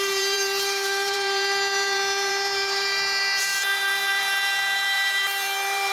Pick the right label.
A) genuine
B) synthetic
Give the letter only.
B